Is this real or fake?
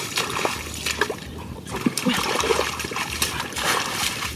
fake